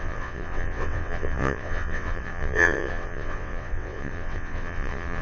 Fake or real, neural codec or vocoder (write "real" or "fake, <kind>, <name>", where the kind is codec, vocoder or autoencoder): fake, vocoder, WaveNeXt